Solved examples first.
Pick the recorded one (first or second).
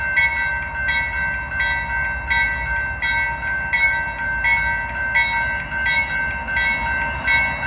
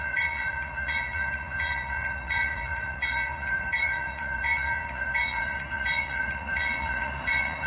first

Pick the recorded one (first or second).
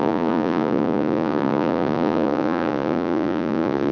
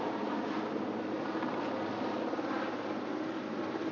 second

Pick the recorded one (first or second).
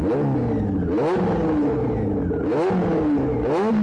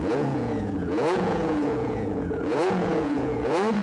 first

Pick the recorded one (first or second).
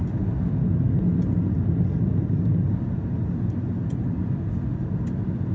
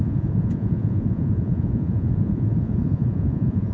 first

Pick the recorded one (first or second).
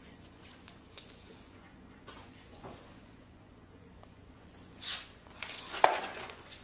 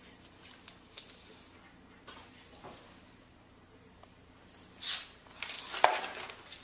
second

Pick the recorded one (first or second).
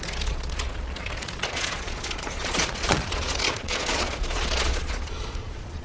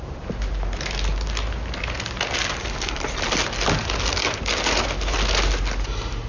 second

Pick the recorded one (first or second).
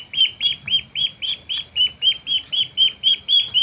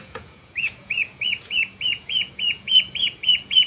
first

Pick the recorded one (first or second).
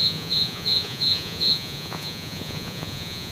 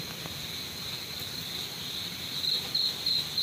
second